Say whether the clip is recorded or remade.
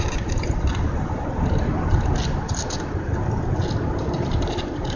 recorded